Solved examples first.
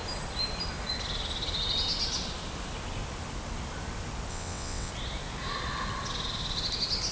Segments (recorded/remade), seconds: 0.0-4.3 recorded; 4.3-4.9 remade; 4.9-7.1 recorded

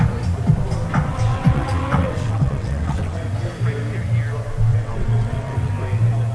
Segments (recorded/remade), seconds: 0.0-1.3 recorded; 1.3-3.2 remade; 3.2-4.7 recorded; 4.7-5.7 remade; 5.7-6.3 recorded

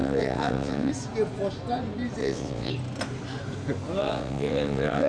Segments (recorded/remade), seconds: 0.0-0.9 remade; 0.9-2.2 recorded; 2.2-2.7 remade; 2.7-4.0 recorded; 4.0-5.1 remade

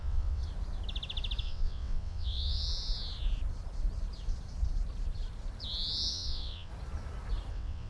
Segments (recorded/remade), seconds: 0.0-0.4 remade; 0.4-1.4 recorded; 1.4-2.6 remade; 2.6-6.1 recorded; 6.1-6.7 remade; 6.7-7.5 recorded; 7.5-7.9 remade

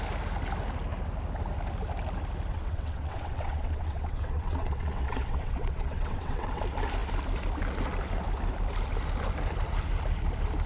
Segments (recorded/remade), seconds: 0.0-2.5 recorded; 2.5-6.6 remade; 6.6-10.7 recorded